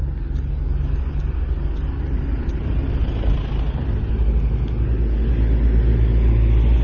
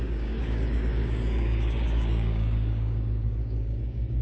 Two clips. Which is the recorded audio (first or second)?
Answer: first